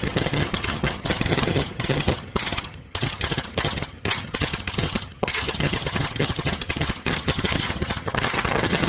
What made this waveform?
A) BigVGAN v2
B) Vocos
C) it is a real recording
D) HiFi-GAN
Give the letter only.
D